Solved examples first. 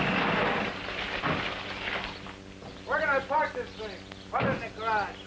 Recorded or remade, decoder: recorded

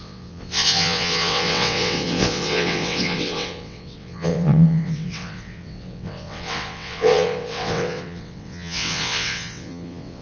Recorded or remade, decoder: remade, vocoder, WaveNeXt